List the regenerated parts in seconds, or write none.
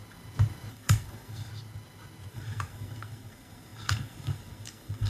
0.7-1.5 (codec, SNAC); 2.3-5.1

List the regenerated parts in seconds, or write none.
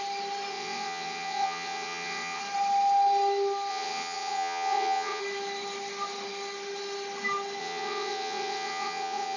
0.5-2.4 (vocoder, WaveNeXt); 3.7-5.2; 7.6-9.4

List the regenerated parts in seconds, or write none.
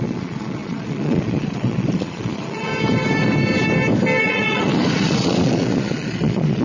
0.0-2.7 (vocoder, Vocos); 4.2-6.6